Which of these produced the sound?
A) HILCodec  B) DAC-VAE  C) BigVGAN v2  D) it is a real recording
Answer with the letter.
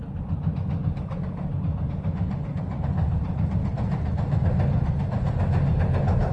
D